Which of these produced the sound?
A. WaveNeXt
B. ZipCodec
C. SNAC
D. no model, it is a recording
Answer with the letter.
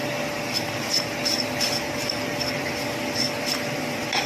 D